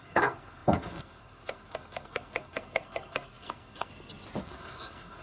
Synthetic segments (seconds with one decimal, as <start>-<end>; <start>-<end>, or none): 0.0-3.9; 4.4-5.2